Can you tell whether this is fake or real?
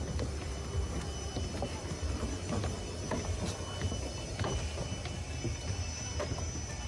real